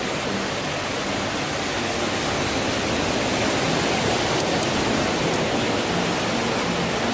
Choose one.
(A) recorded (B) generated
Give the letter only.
A